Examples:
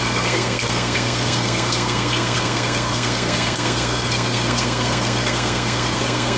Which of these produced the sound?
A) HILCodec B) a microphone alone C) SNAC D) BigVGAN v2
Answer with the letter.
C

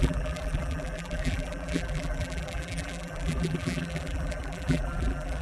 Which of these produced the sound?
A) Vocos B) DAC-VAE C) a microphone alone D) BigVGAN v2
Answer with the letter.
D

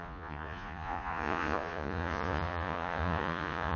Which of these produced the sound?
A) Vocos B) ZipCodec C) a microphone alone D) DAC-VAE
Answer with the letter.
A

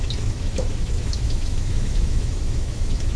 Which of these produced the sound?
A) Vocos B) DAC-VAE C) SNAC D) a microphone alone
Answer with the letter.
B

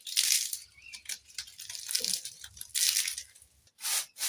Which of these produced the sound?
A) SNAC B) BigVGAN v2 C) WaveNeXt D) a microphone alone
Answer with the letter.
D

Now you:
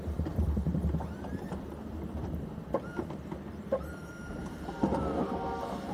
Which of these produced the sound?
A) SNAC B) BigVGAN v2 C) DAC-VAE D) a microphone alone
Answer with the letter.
B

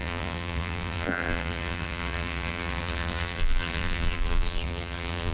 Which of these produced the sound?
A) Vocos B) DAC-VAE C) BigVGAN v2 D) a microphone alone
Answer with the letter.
C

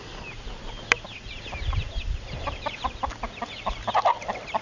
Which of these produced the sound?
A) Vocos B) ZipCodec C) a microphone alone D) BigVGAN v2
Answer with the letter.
C